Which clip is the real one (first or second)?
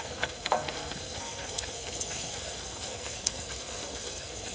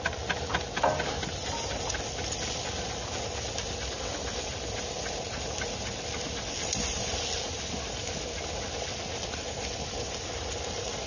second